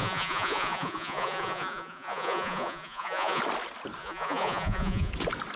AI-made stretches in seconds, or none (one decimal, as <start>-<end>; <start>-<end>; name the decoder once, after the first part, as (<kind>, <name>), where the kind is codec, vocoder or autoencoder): 0.0-3.4 (vocoder, Vocos); 4.0-5.1